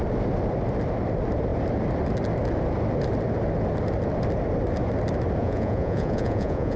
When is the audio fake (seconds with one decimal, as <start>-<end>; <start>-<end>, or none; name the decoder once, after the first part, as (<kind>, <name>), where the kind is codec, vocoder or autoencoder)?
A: 5.4-6.8 (vocoder, Vocos)